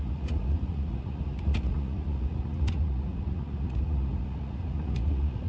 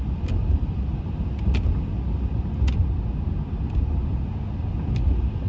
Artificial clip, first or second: first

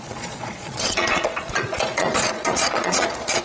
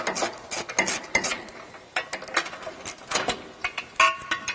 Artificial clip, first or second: first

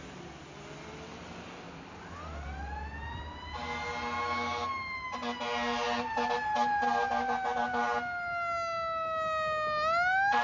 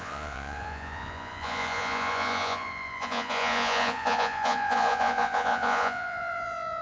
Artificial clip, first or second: second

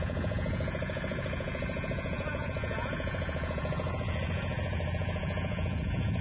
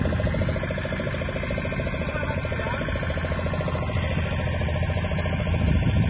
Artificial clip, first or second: first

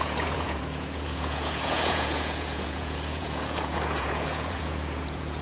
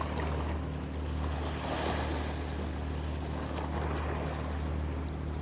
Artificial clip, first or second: first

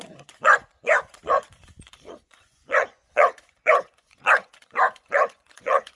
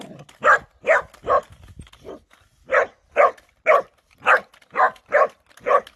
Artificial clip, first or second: first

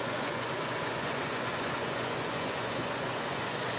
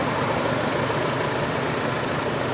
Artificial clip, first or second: first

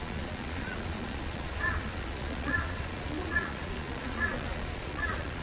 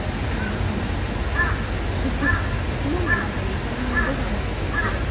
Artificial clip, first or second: first